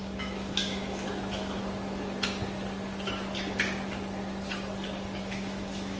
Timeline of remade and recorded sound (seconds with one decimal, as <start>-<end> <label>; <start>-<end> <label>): 0.0-1.6 remade; 1.6-5.2 recorded; 5.2-6.0 remade